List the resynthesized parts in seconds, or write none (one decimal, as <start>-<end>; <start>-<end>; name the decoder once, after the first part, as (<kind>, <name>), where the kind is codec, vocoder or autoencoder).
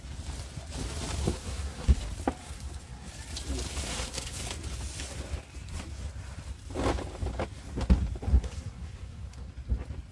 1.2-2.0 (codec, SNAC); 2.4-3.1; 3.9-4.4; 8.3-9.5